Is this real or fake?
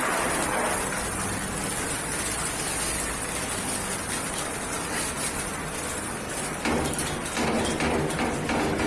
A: real